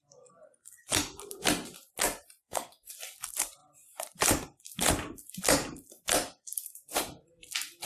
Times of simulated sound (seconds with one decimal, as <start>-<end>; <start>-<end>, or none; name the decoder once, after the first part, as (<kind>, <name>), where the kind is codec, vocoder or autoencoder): 2.4-2.9 (codec, SNAC)